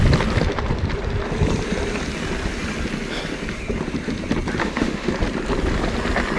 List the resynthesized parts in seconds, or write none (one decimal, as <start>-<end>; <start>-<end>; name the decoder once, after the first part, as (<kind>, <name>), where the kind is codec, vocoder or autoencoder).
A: 4.6-5.1 (autoencoder, DAC-VAE)